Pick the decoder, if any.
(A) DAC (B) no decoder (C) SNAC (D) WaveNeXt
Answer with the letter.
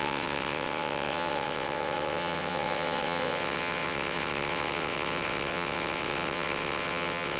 D